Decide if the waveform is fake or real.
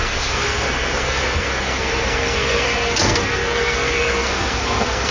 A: fake